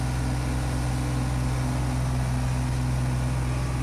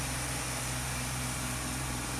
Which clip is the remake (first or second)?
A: second